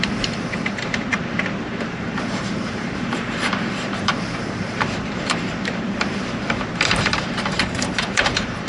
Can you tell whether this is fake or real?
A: fake